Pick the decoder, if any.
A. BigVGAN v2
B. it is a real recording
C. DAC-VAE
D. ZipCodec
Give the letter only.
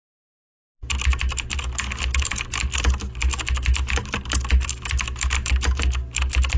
B